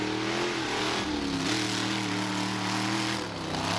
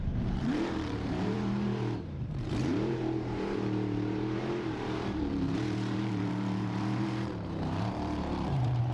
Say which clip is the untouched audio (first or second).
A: first